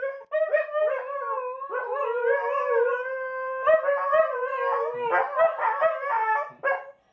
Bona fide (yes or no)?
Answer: yes